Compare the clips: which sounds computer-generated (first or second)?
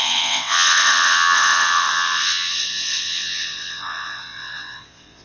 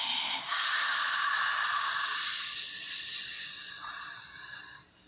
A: first